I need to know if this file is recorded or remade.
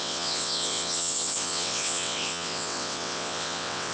remade